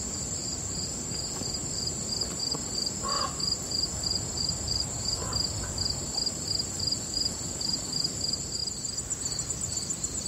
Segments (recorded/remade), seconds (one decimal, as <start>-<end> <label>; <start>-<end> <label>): 0.0-5.2 remade; 5.2-6.7 recorded; 6.7-8.6 remade; 8.6-9.4 recorded; 9.4-10.3 remade